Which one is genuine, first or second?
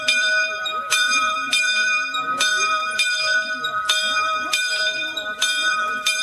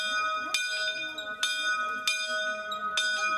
second